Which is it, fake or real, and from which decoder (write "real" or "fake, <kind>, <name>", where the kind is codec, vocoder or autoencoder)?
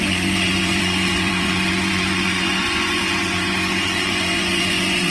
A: fake, vocoder, Vocos